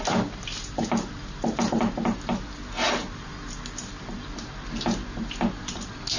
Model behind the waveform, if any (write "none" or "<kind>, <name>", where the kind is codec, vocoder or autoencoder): none